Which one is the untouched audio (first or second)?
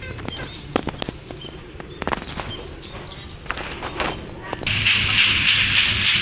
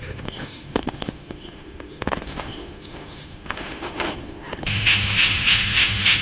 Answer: first